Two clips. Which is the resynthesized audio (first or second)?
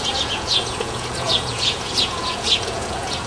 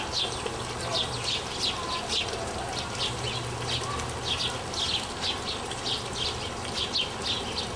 first